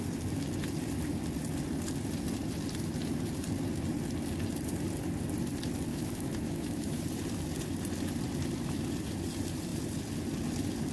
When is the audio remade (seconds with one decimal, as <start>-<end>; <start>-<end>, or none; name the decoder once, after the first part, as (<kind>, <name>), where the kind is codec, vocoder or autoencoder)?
5.9-7.0 (autoencoder, DAC-VAE)